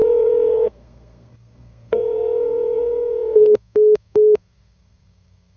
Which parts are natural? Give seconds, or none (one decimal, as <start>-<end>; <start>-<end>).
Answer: none